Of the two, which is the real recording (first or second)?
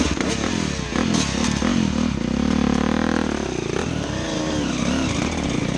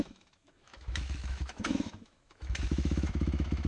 first